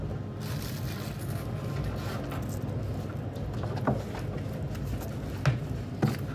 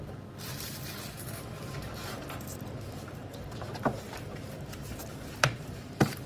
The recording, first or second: first